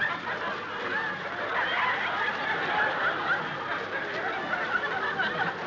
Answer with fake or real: real